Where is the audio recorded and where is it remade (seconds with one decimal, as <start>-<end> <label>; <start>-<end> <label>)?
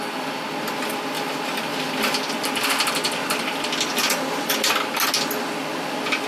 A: 0.0-1.7 recorded; 1.7-2.7 remade; 2.7-3.2 recorded; 3.2-4.7 remade; 4.7-6.3 recorded